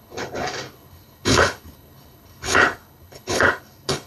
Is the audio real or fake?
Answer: fake